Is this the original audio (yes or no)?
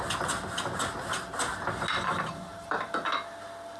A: yes